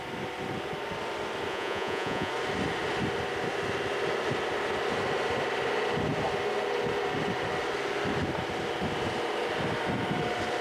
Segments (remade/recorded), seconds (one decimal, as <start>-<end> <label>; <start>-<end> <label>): 0.0-1.5 recorded; 1.5-2.3 remade; 2.3-10.6 recorded